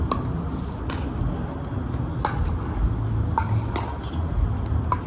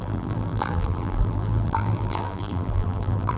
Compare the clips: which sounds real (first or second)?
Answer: first